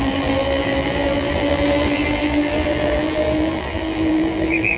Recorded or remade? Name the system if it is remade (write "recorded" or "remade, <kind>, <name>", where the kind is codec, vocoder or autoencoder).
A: remade, vocoder, BigVGAN v2